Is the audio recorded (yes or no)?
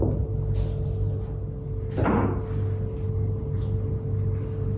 yes